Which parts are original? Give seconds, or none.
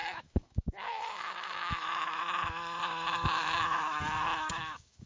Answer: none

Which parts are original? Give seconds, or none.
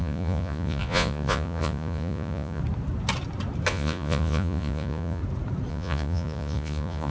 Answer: 2.6-3.7; 5.2-5.7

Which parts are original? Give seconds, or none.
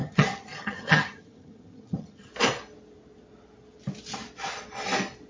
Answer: 2.3-5.3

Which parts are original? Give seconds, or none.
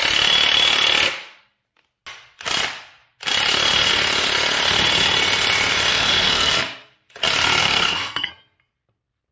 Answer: 0.0-5.9; 6.6-7.6; 8.3-9.3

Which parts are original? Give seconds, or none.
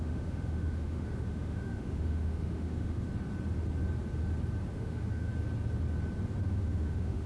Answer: 3.1-4.7; 5.3-6.4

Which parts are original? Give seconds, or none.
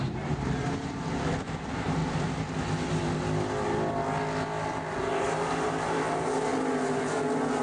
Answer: 2.0-5.0; 6.5-7.6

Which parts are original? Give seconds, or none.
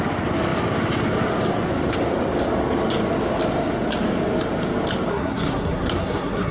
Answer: 0.0-5.1